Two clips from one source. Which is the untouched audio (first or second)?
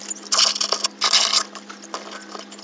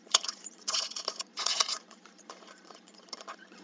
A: first